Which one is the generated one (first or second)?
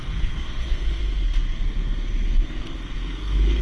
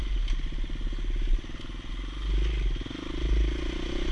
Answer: first